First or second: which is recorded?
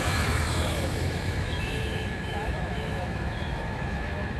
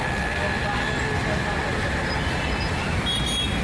second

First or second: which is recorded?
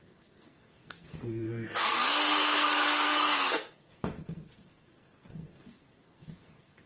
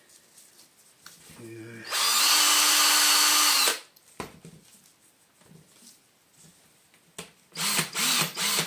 second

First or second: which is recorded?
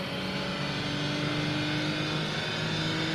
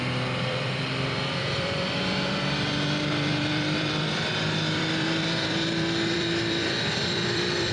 first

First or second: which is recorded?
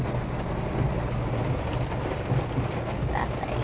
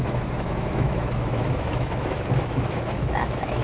first